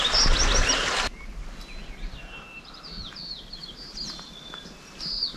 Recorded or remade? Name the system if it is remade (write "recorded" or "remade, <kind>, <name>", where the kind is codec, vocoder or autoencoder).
recorded